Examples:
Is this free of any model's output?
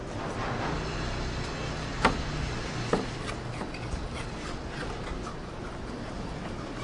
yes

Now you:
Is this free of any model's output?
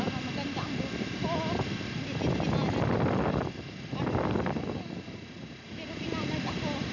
yes